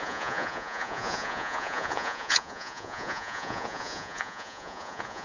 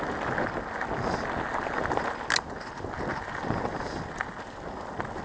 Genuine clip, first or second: second